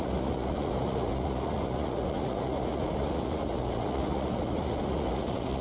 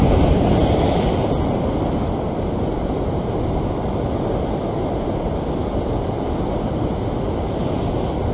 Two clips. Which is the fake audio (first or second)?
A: first